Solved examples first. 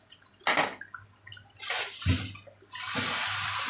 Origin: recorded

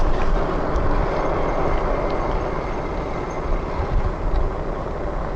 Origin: recorded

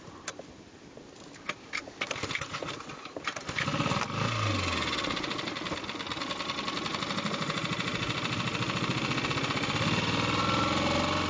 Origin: recorded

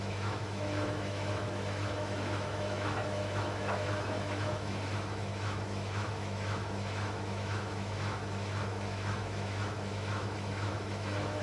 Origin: remade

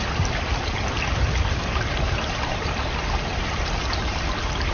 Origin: recorded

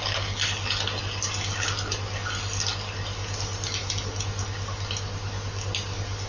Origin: recorded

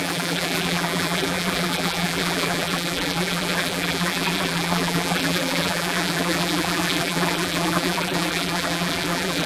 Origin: remade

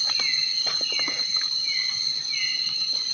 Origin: remade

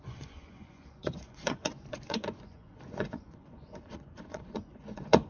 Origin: remade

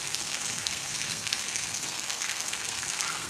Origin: remade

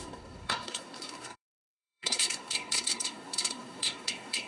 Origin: remade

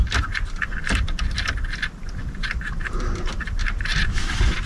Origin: recorded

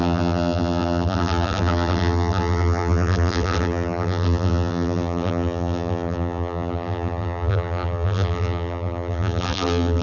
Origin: remade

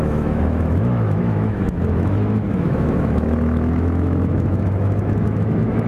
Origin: remade